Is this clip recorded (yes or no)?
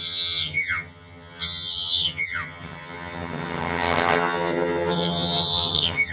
no